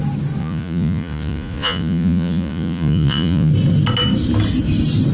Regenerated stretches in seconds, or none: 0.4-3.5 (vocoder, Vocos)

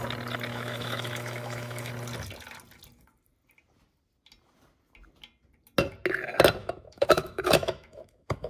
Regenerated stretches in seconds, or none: 0.5-1.9 (autoencoder, DAC-VAE); 6.6-8.5

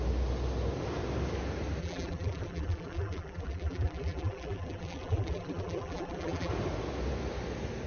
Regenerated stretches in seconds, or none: 1.8-6.5 (vocoder, BigVGAN v2)

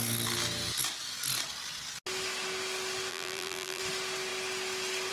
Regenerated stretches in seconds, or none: 3.1-3.8 (vocoder, BigVGAN v2)

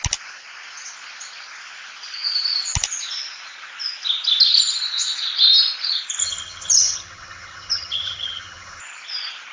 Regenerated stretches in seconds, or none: 6.2-8.8 (vocoder, HiFi-GAN)